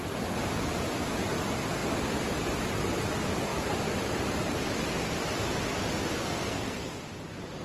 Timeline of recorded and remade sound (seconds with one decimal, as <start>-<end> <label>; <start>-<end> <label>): 0.0-6.2 recorded; 6.2-6.9 remade; 6.9-7.6 recorded